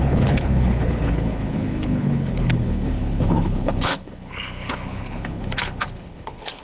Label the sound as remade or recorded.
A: remade